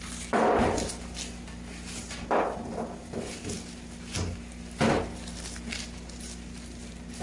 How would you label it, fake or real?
fake